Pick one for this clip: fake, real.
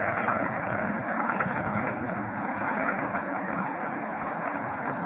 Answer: fake